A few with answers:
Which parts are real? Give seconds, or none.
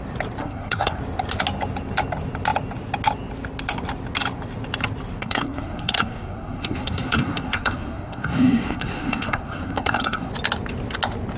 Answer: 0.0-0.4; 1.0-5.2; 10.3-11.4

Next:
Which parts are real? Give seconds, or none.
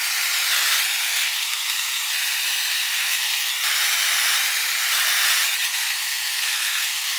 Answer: 0.0-1.0; 2.0-2.7; 3.5-5.7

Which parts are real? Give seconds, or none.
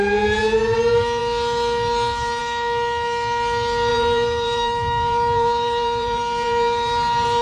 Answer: 0.0-3.9